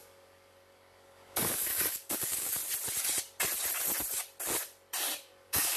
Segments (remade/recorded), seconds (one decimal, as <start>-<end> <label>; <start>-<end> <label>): 0.0-2.6 remade; 2.6-5.2 recorded; 5.2-5.8 remade